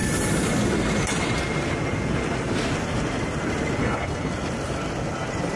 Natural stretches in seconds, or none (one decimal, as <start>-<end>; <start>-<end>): 0.0-3.8; 4.3-5.6